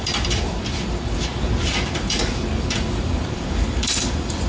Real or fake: fake